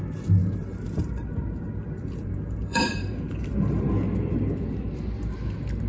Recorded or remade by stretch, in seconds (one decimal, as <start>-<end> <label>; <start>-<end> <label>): 0.0-0.4 recorded; 0.4-3.9 remade; 3.9-5.9 recorded